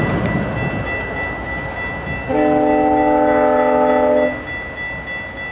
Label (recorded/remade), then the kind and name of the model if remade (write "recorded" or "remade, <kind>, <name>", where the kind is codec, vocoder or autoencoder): recorded